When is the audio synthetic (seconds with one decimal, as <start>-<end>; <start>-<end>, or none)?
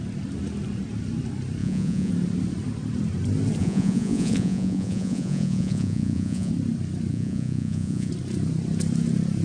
1.6-2.1; 3.6-6.5; 7.1-8.1